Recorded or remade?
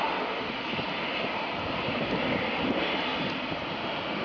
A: recorded